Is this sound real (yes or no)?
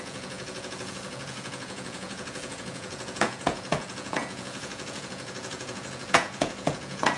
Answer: no